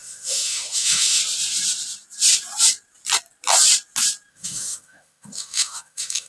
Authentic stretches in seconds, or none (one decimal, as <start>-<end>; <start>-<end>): 1.2-4.3